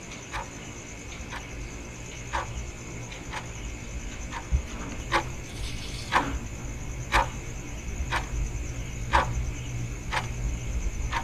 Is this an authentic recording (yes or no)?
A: yes